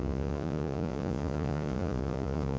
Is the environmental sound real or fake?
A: fake